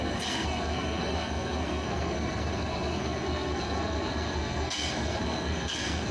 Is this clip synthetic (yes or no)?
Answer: yes